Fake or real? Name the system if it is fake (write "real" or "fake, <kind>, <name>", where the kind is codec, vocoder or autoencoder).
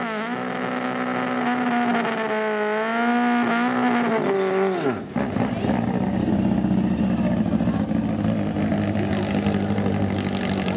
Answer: real